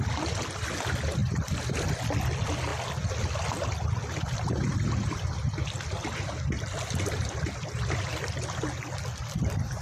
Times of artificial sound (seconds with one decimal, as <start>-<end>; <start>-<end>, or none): none